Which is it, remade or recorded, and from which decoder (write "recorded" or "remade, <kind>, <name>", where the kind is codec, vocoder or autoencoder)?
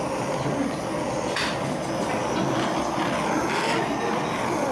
recorded